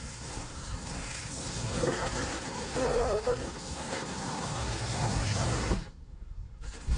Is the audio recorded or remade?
remade